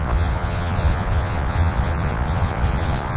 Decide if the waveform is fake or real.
fake